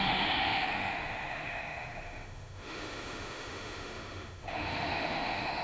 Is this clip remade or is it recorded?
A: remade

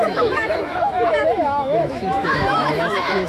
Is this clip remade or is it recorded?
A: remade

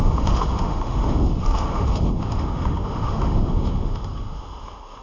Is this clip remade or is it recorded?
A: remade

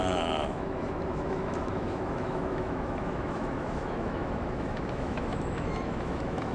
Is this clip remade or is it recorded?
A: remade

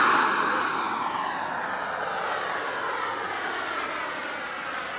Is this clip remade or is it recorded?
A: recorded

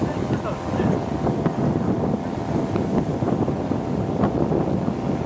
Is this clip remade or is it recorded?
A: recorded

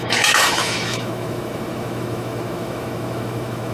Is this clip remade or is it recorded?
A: remade